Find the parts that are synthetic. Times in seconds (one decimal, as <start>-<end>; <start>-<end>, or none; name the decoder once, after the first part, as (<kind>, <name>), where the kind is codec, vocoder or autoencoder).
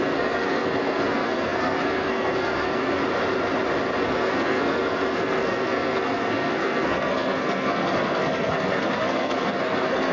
0.0-3.0 (codec, SNAC); 4.0-10.1